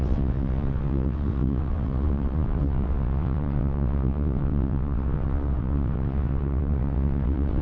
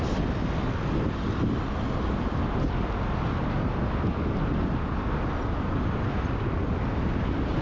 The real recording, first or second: second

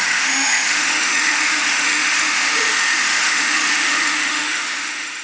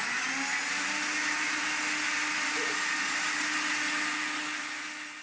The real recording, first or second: second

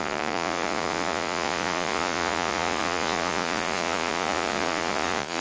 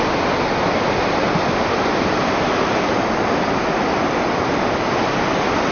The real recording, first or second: second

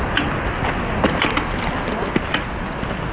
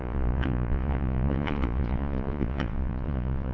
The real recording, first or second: first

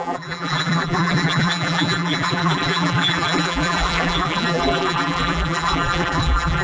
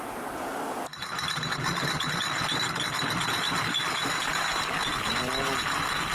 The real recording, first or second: second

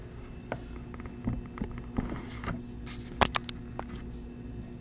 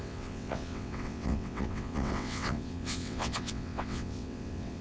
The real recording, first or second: first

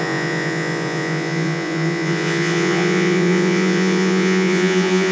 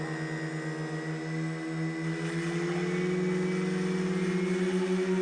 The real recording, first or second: second